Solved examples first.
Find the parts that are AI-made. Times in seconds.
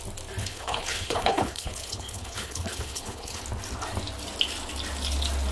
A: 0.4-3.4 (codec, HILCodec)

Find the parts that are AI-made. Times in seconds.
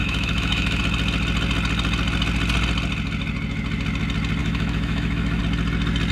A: 0.0-0.8 (autoencoder, DAC-VAE); 4.4-5.4